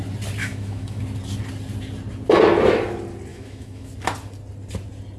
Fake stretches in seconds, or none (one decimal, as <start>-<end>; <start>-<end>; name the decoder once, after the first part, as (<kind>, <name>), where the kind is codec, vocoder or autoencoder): 0.4-1.0 (autoencoder, DAC-VAE); 3.3-3.9